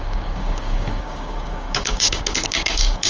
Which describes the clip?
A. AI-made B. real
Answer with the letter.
A